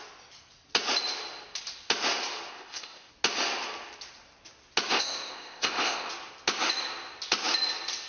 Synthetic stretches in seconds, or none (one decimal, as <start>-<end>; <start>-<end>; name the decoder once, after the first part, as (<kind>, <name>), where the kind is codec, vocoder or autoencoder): 2.5-3.1 (codec, ZipCodec); 4.9-6.1